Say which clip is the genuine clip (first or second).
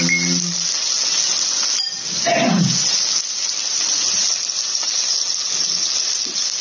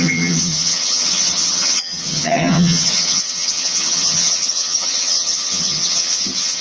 first